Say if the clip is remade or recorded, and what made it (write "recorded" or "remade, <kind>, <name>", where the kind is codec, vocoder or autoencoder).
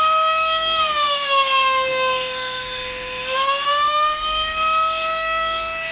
remade, autoencoder, DAC-VAE